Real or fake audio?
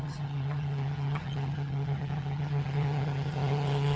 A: fake